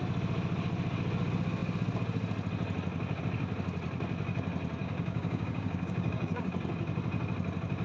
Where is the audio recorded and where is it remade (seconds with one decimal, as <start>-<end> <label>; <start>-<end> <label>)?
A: 0.0-4.8 recorded; 4.8-6.5 remade; 6.5-7.8 recorded

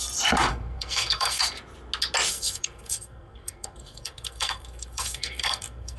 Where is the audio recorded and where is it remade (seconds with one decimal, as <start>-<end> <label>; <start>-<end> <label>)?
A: 0.0-0.5 recorded; 0.5-1.4 remade; 1.4-2.3 recorded; 2.3-6.0 remade

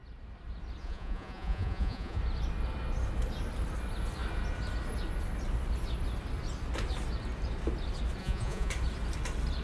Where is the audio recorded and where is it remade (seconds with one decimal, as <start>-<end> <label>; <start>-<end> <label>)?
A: 0.0-0.8 recorded; 0.8-2.2 remade; 2.2-8.2 recorded; 8.2-8.7 remade; 8.7-9.6 recorded

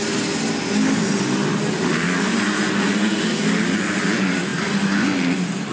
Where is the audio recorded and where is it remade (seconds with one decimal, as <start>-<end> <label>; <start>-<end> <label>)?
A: 0.0-5.7 recorded

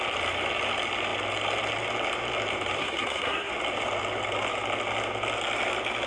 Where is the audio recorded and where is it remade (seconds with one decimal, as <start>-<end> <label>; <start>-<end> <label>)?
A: 0.0-2.8 recorded; 2.8-3.5 remade; 3.5-6.1 recorded